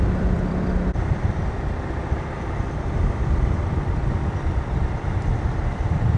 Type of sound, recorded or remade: remade